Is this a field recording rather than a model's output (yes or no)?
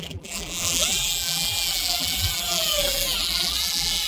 no